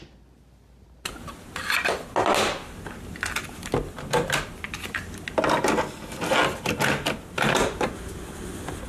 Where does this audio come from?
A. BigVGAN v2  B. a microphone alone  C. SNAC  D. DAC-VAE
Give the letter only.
B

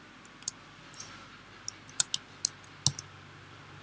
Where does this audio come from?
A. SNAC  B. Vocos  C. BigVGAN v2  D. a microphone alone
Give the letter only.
D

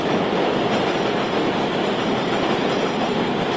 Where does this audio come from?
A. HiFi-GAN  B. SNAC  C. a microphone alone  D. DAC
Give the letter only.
C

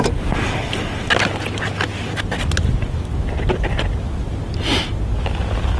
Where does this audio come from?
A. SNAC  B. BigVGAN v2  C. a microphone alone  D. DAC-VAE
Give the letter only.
C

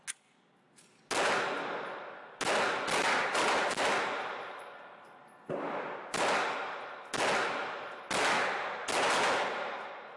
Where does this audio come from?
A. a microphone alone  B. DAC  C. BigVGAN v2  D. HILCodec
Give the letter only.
A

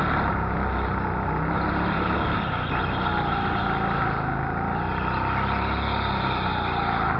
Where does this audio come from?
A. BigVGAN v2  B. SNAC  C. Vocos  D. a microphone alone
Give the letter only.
D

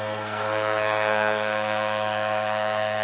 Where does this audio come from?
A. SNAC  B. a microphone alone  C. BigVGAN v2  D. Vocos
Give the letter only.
A